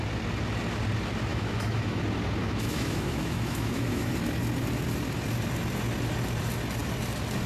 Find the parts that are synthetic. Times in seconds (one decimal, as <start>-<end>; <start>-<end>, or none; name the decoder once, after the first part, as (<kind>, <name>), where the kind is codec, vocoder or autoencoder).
1.3-2.0 (autoencoder, DAC-VAE); 2.4-4.1